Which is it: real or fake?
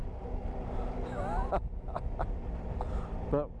real